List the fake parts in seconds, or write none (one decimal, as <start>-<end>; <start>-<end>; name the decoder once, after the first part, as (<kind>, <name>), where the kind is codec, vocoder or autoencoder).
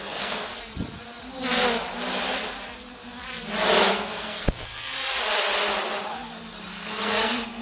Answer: 0.0-0.5 (codec, SNAC); 3.9-5.1; 6.7-7.6